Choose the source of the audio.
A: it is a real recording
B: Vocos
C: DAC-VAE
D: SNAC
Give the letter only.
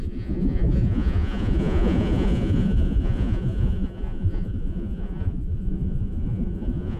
B